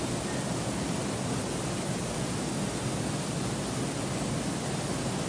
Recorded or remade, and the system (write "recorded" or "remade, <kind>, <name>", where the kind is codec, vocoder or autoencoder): recorded